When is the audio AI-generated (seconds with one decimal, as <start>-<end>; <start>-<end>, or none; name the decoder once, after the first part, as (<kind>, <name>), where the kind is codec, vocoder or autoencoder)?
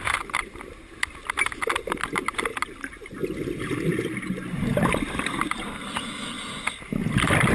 none